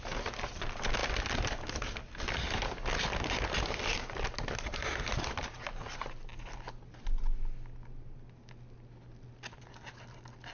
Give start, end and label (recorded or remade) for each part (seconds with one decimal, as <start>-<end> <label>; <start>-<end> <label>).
0.0-10.5 recorded